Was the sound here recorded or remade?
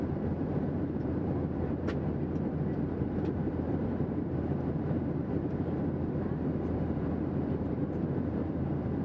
remade